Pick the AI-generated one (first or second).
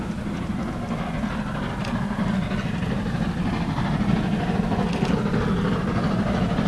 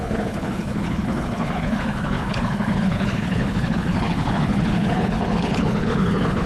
second